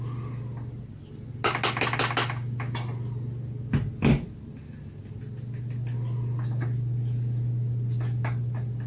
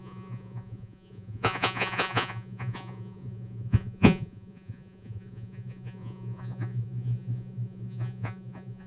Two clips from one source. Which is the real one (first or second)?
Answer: first